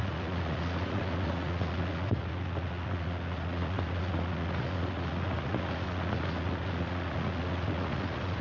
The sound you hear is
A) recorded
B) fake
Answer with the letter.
B